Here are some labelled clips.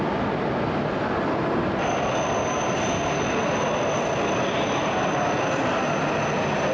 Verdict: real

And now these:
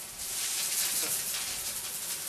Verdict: real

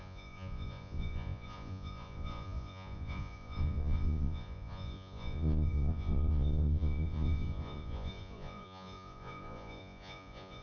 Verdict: fake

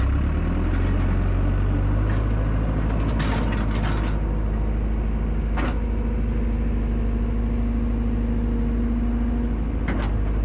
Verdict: real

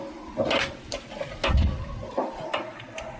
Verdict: real